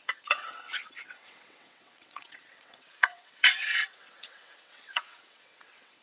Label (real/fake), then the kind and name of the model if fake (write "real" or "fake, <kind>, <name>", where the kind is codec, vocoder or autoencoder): fake, vocoder, WaveNeXt